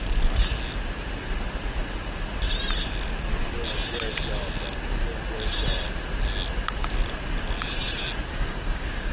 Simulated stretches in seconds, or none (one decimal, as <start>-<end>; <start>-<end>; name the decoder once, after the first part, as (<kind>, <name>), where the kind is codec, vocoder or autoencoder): 8.2-9.1 (codec, DAC)